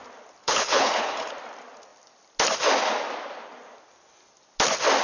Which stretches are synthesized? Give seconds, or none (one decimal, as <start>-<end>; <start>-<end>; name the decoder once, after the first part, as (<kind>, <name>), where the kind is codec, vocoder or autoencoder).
0.4-1.3 (codec, HILCodec)